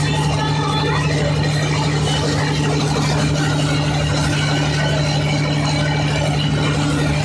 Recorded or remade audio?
recorded